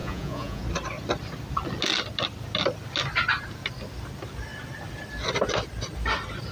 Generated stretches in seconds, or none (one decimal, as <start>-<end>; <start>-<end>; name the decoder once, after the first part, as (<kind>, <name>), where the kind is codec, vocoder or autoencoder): 0.0-0.6 (vocoder, Vocos)